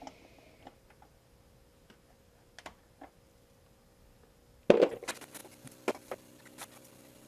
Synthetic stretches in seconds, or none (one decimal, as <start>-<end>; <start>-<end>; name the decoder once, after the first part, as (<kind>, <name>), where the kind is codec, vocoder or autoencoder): none